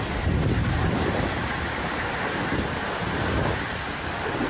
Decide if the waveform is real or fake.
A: real